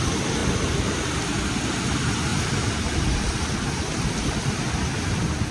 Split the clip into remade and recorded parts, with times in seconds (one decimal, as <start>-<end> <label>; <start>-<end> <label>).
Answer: 0.0-5.5 recorded